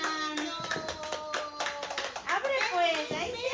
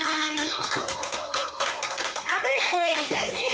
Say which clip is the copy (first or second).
second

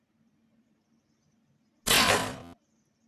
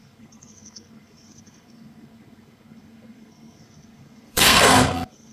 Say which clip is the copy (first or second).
second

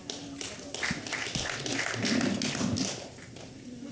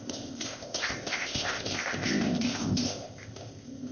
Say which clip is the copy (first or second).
second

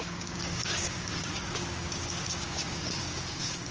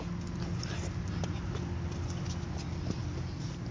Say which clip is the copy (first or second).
first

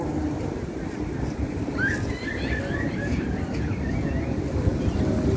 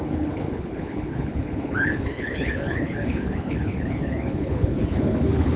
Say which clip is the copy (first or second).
second